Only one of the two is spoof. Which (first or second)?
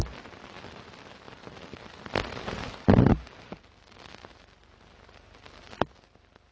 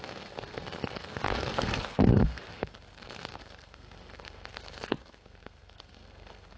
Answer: second